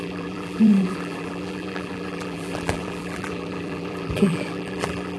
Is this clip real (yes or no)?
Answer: no